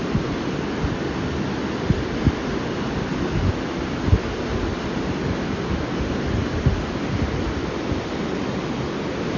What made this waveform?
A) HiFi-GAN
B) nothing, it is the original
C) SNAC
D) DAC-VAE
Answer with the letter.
B